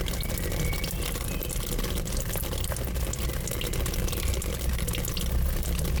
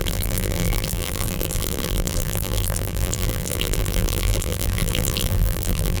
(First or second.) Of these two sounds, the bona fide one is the first